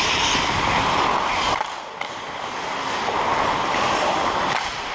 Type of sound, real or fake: fake